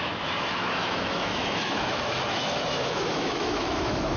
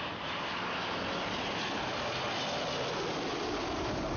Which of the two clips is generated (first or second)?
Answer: first